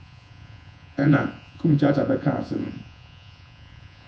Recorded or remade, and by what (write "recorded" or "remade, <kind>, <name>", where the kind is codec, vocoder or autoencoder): remade, vocoder, Vocos